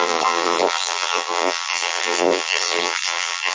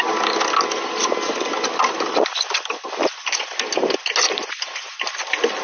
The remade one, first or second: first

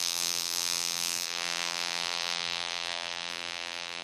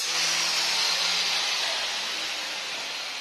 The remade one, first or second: first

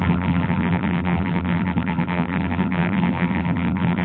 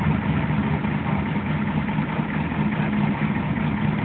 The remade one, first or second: first